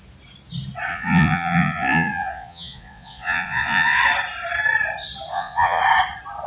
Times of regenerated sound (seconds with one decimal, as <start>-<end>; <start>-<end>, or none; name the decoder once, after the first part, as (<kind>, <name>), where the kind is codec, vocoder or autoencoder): 0.9-4.0 (vocoder, Vocos); 5.3-5.8